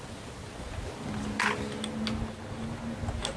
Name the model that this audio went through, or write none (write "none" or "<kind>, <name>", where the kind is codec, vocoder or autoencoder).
none